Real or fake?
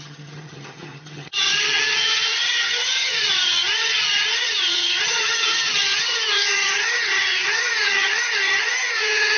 fake